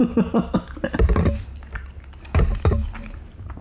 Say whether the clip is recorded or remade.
recorded